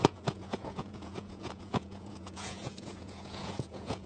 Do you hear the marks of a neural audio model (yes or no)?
yes